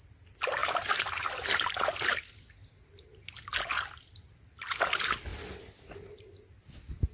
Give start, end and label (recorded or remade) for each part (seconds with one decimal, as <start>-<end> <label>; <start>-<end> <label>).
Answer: 0.0-7.1 recorded